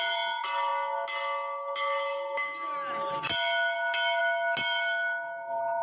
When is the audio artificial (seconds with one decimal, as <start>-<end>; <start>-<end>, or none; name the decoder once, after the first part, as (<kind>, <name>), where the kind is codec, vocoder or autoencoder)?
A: none